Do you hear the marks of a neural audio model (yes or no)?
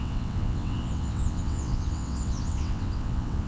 yes